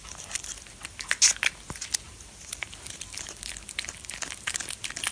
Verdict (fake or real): real